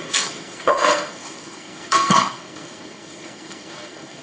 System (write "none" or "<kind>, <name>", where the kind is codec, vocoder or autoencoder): codec, SNAC